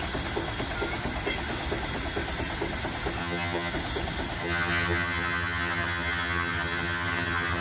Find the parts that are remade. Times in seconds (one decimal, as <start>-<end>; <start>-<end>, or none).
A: 3.2-3.7; 4.4-7.6